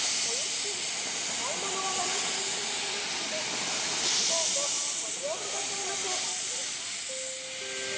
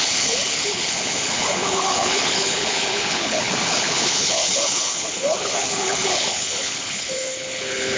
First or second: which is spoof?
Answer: second